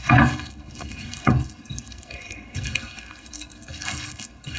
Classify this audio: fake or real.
fake